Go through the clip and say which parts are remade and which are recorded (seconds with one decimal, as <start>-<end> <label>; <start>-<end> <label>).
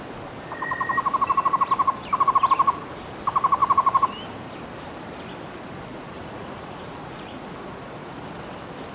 0.0-5.9 recorded; 5.9-8.2 remade; 8.2-8.9 recorded